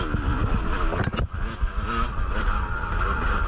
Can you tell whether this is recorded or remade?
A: recorded